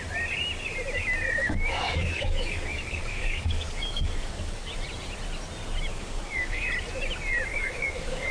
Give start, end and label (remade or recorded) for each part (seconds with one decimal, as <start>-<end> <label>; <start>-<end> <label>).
0.0-1.4 recorded; 1.4-4.7 remade; 4.7-5.9 recorded; 5.9-6.7 remade; 6.7-7.5 recorded; 7.5-8.3 remade